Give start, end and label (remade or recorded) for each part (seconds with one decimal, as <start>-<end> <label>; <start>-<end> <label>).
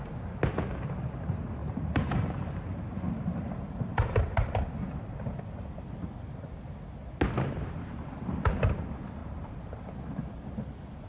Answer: 0.0-1.6 recorded; 1.6-4.7 remade; 4.7-9.2 recorded; 9.2-9.8 remade; 9.8-11.1 recorded